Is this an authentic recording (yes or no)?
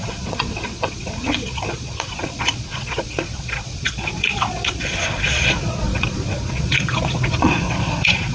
no